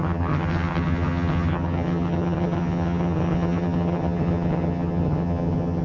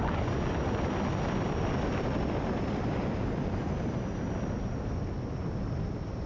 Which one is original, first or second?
second